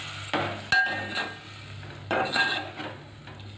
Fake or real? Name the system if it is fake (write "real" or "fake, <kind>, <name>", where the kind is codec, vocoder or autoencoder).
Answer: real